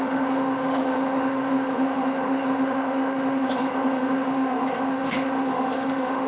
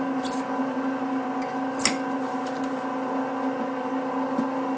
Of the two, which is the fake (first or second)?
first